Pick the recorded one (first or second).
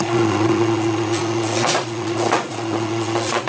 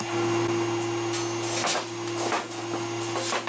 second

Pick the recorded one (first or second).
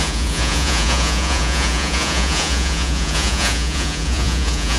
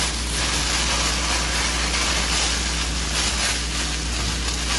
second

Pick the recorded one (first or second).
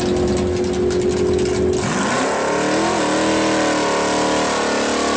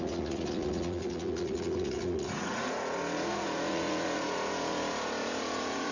first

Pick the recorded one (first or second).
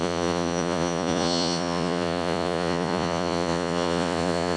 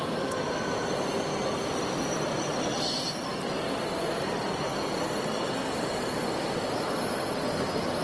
second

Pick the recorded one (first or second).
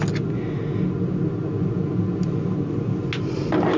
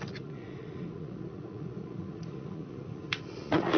first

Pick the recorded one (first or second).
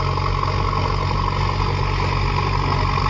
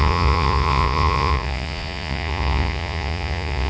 first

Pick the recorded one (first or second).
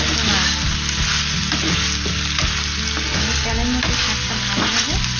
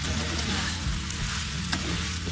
first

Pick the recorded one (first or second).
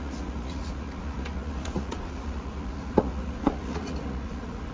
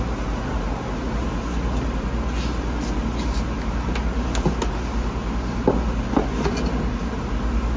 second